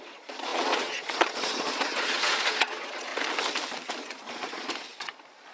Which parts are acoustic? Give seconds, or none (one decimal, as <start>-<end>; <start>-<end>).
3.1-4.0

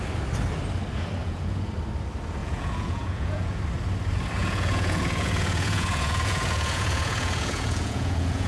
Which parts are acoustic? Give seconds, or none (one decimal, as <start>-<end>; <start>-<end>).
0.0-1.2; 1.7-2.4; 3.6-4.4

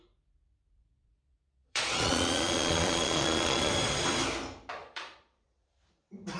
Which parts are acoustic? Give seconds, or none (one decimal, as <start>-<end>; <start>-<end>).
0.0-0.8; 3.7-4.8; 5.8-6.4

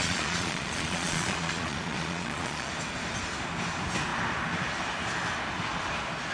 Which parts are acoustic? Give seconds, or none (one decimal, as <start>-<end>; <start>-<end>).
2.7-6.3